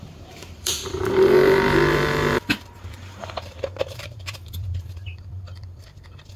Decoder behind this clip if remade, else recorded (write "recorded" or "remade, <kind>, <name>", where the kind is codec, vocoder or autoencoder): remade, vocoder, BigVGAN v2